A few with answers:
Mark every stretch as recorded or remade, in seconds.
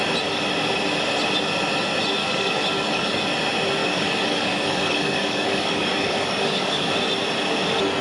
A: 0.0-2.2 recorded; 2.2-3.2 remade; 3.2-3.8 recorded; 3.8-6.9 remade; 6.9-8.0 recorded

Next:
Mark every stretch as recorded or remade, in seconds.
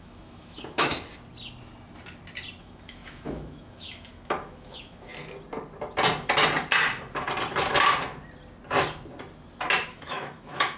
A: 0.0-0.9 remade; 0.9-2.6 recorded; 2.6-5.1 remade; 5.1-9.9 recorded; 9.9-10.8 remade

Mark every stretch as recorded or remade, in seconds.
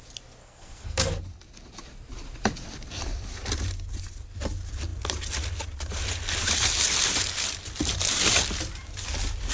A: 0.0-0.4 recorded; 0.4-1.2 remade; 1.2-9.5 recorded